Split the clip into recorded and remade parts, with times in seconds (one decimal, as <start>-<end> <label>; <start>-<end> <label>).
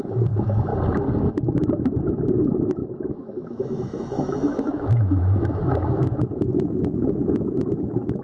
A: 0.0-0.7 remade; 0.7-1.3 recorded; 1.3-8.2 remade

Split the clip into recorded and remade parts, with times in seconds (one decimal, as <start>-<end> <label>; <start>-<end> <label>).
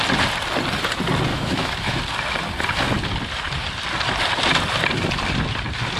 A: 0.0-1.3 recorded; 1.3-2.0 remade; 2.0-6.0 recorded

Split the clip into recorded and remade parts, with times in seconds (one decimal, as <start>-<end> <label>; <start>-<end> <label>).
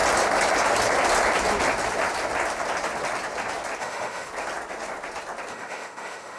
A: 0.0-3.8 recorded; 3.8-4.3 remade; 4.3-5.5 recorded; 5.5-6.4 remade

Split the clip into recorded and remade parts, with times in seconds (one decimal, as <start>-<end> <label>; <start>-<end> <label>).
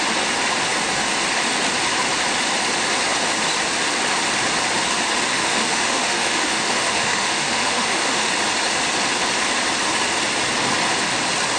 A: 0.0-5.3 recorded; 5.3-8.3 remade; 8.3-11.6 recorded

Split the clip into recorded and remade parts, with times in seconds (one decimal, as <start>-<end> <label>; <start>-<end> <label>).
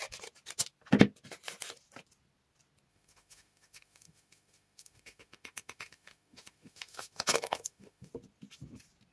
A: 0.0-2.9 recorded; 2.9-8.1 remade; 8.1-9.1 recorded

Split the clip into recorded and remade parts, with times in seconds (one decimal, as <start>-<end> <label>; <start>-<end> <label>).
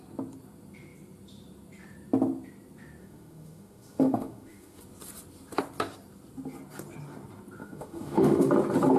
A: 0.0-3.0 recorded; 3.0-4.8 remade; 4.8-7.6 recorded; 7.6-8.5 remade; 8.5-9.0 recorded